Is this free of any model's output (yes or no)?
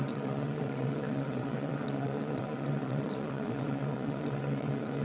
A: no